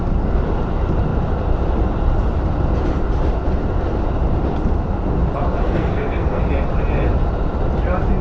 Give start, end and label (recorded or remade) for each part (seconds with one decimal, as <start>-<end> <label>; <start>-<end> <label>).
0.0-5.6 recorded; 5.6-6.4 remade; 6.4-8.2 recorded